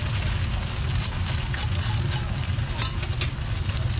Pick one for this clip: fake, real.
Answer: real